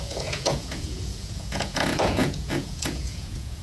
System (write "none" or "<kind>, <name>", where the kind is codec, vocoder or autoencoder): vocoder, Vocos